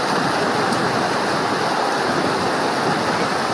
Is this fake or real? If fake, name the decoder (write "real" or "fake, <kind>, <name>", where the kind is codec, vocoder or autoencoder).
real